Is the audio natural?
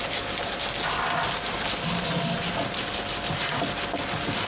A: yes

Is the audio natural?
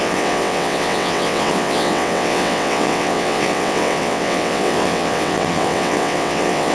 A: no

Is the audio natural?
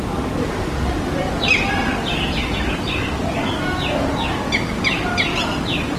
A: yes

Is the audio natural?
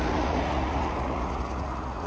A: no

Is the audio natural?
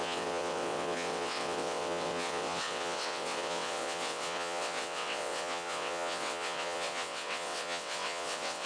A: no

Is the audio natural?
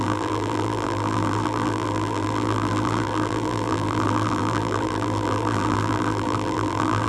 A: no